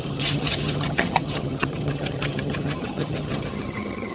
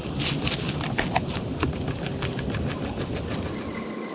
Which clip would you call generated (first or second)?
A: first